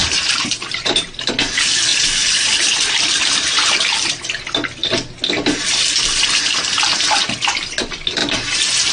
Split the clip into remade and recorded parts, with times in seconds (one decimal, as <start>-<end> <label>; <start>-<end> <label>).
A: 0.0-1.3 remade; 1.3-1.9 recorded; 1.9-4.3 remade; 4.3-8.2 recorded; 8.2-8.9 remade